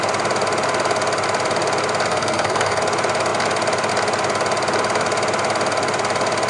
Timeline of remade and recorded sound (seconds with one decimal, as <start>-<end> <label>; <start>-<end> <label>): 0.0-2.1 recorded; 2.1-2.8 remade; 2.8-6.5 recorded